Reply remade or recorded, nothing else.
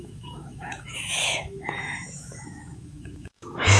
remade